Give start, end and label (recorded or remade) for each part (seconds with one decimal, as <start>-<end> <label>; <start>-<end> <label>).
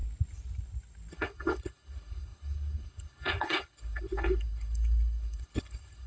0.0-1.1 recorded; 1.1-6.1 remade